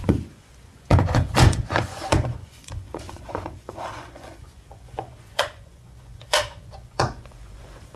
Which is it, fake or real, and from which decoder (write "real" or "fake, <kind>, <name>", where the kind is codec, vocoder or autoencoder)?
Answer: fake, vocoder, Vocos